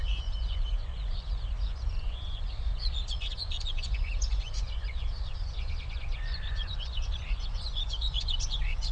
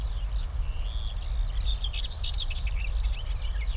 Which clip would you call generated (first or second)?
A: first